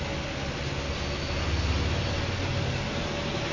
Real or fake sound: real